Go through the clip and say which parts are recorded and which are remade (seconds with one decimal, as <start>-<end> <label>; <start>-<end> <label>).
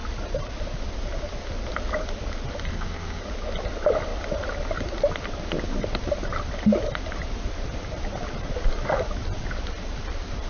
0.0-2.7 recorded; 2.7-3.2 remade; 3.2-10.5 recorded